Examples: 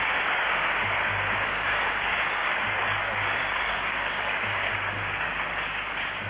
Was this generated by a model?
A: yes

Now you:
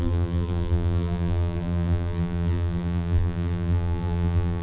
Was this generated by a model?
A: yes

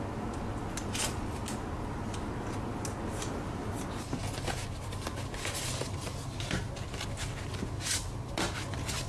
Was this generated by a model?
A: no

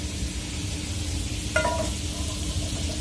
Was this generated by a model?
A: no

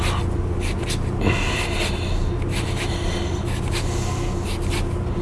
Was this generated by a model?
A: no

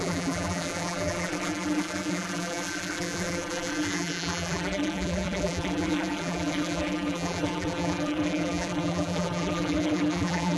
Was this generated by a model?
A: yes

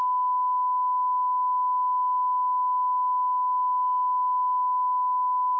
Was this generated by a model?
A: yes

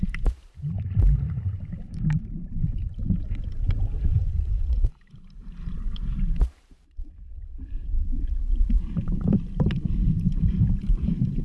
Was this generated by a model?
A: yes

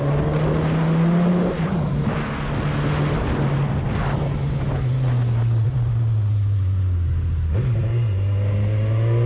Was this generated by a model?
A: no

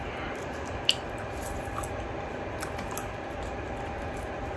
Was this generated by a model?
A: no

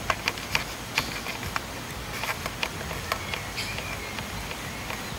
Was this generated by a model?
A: no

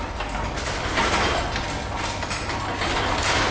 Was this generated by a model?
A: no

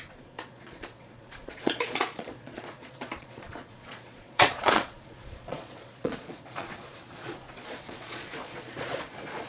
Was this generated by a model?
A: yes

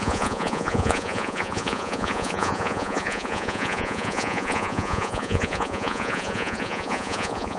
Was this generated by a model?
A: yes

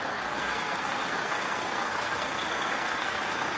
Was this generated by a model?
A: yes